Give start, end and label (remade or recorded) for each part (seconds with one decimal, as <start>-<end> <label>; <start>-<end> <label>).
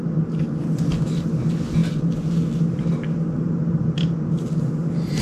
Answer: 0.0-5.2 recorded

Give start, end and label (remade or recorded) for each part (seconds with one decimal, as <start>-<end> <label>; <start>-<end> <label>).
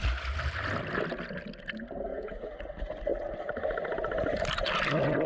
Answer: 0.0-2.1 recorded; 2.1-2.6 remade; 2.6-5.3 recorded